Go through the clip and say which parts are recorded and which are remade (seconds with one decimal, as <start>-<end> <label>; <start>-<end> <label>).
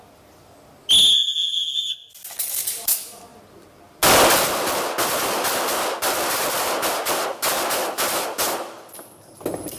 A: 0.0-9.8 recorded